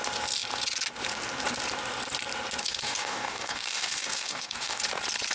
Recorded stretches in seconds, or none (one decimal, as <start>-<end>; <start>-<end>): 0.0-2.6; 4.8-5.3